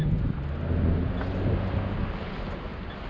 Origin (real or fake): real